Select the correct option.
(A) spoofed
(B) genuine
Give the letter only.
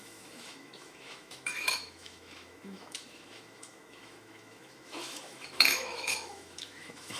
A